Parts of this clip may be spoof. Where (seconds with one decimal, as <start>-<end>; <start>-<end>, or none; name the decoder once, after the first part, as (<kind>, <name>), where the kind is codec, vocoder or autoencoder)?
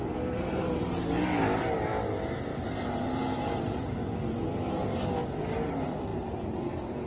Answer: 2.5-3.8 (vocoder, BigVGAN v2); 6.1-6.6